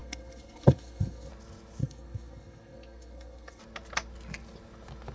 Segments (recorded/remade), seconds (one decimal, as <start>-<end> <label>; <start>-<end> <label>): 0.0-1.3 remade; 1.3-1.8 recorded; 1.8-3.6 remade; 3.6-5.1 recorded